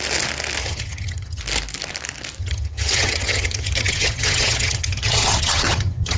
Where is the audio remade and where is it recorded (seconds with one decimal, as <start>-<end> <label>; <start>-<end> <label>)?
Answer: 0.0-0.6 recorded; 0.6-1.4 remade; 1.4-2.4 recorded; 2.4-6.2 remade